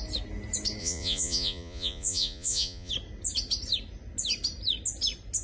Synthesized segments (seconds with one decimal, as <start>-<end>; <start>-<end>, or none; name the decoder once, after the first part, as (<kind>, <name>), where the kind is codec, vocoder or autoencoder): 0.8-2.9 (vocoder, Vocos)